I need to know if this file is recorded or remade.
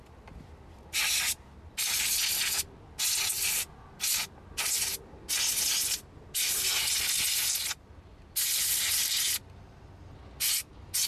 recorded